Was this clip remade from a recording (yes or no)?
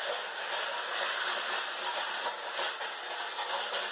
no